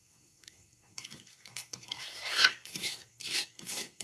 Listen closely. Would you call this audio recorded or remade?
remade